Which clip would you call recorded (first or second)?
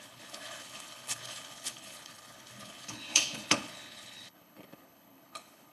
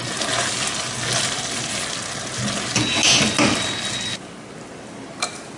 second